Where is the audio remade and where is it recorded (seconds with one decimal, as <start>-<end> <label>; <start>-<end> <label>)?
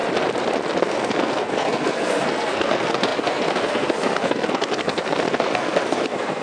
0.0-0.8 recorded; 0.8-6.4 remade